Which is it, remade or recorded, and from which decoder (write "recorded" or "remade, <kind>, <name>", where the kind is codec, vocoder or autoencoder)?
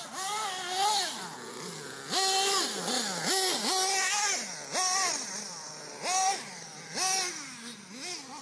recorded